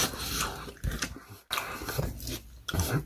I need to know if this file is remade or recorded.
recorded